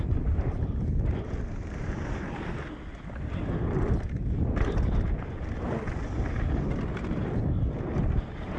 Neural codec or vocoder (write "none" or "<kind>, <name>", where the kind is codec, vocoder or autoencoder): none